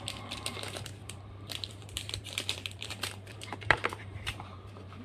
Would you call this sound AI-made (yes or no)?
yes